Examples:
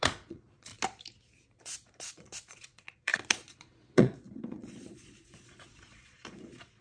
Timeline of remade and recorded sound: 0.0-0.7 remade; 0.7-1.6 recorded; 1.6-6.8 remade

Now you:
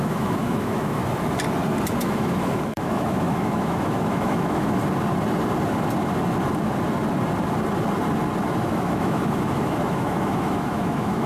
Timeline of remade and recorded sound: 0.0-1.0 remade; 1.0-2.0 recorded; 2.0-4.8 remade; 4.8-8.7 recorded; 8.7-11.3 remade

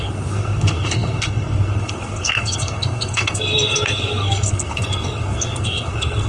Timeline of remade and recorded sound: 0.0-6.3 remade

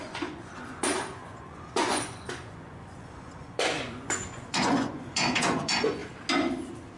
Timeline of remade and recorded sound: 0.0-6.0 remade; 6.0-7.0 recorded

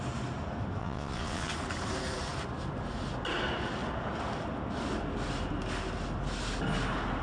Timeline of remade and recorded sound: 0.0-0.8 recorded; 0.8-1.5 remade; 1.5-7.2 recorded

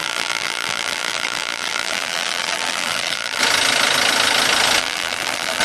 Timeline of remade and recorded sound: 0.0-3.4 remade; 3.4-4.8 recorded; 4.8-5.6 remade